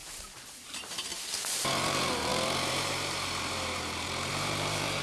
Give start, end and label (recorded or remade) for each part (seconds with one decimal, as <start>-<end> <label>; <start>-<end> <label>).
0.0-5.0 remade